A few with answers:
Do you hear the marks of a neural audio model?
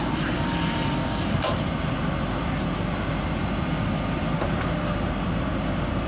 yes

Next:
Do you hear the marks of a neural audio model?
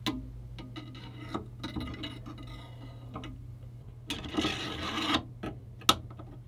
no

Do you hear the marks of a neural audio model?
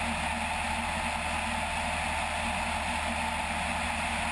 no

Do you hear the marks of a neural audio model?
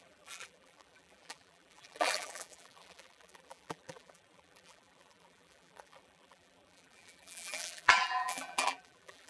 yes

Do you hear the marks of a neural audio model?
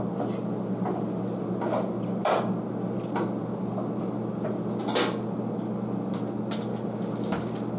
no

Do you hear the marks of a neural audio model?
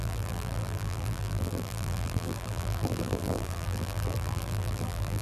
yes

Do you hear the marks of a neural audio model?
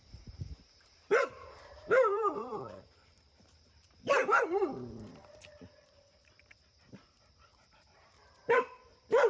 yes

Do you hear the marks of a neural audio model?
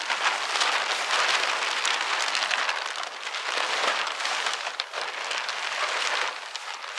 no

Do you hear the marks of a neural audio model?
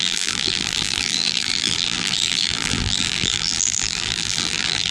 yes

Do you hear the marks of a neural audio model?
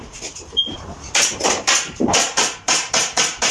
yes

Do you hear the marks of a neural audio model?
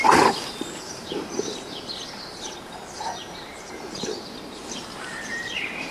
yes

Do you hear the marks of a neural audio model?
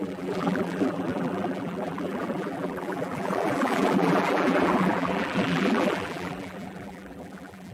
yes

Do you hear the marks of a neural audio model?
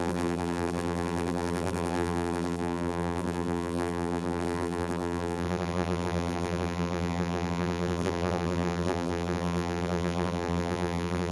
yes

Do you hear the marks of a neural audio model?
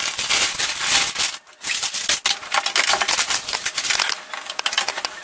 no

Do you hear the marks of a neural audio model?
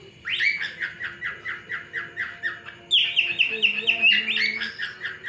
no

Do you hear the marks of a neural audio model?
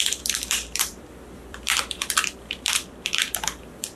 yes